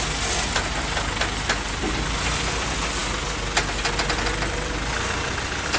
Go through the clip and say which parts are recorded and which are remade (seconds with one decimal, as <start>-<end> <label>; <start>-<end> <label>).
0.0-5.8 recorded

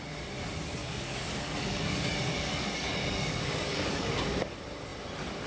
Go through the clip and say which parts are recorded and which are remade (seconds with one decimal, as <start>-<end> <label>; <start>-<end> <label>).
0.0-0.8 recorded; 0.8-4.1 remade; 4.1-5.5 recorded

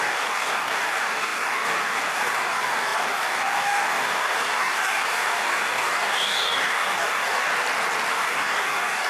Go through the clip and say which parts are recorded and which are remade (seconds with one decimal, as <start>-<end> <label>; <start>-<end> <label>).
0.0-7.5 remade; 7.5-8.1 recorded; 8.1-9.1 remade